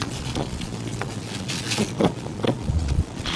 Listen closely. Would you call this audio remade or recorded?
remade